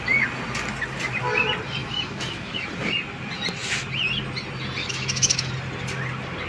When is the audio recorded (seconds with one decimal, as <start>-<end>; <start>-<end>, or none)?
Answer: 0.0-1.8; 2.7-4.8; 5.5-6.5